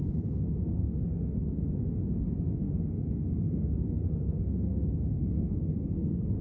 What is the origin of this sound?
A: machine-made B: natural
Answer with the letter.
A